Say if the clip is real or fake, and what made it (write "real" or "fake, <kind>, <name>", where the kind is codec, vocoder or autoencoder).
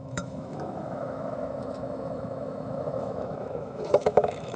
fake, autoencoder, DAC-VAE